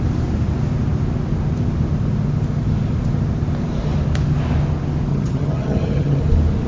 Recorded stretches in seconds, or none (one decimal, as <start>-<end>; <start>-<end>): 0.0-5.1; 6.2-6.7